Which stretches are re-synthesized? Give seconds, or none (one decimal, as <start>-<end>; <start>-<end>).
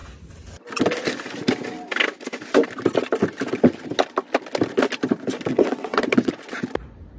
5.5-6.3